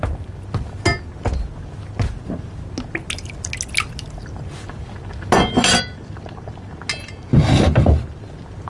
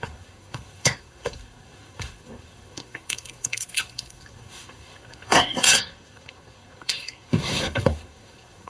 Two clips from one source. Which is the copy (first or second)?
second